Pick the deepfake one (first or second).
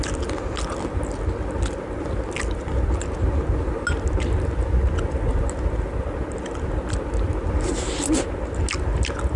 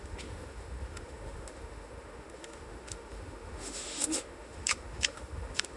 second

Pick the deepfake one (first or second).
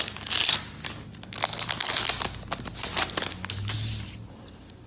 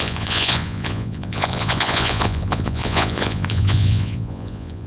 second